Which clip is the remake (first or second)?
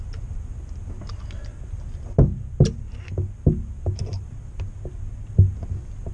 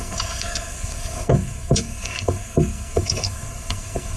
second